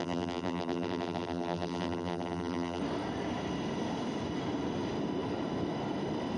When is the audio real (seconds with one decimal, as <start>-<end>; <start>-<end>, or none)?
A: 2.8-6.4